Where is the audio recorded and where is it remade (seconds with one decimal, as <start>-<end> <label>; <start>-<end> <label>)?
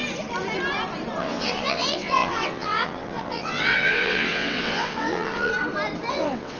0.0-1.2 recorded; 1.2-5.5 remade; 5.5-6.1 recorded; 6.1-6.6 remade